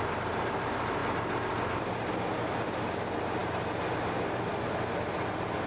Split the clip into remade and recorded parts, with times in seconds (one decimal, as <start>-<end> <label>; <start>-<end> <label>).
0.0-5.7 recorded